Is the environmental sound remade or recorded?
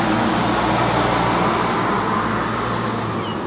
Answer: recorded